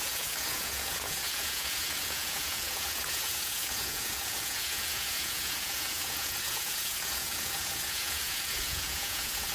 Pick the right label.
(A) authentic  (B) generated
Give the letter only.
B